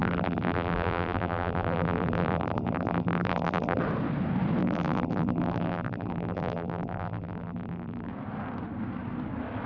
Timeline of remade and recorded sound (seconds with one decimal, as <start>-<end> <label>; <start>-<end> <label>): 0.0-3.8 remade; 3.8-4.6 recorded; 4.6-8.1 remade; 8.1-9.7 recorded